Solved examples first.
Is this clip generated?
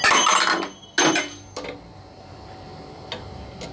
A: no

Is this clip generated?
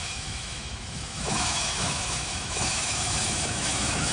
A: yes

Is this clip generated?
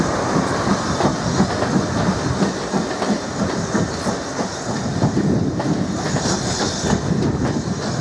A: yes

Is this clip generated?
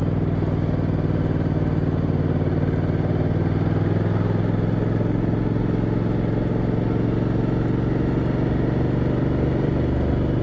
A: no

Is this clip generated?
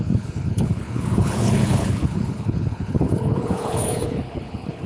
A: yes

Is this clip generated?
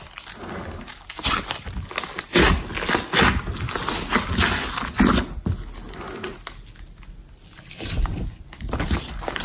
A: no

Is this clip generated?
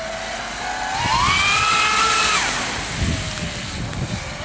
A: no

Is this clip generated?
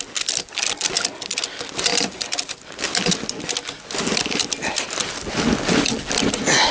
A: no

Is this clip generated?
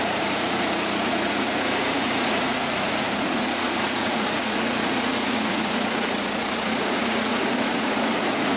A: yes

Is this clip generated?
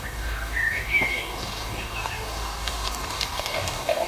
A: yes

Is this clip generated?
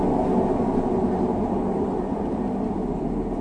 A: no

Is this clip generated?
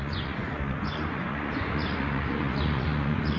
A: yes